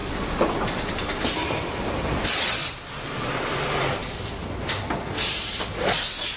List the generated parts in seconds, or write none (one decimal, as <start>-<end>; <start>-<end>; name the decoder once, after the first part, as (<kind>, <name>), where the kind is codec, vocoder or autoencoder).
0.0-2.9 (vocoder, BigVGAN v2); 4.0-6.4